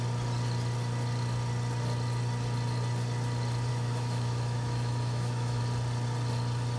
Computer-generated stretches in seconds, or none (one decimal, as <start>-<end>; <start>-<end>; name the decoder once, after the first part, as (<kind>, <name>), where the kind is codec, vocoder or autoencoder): 3.7-5.6 (autoencoder, DAC-VAE)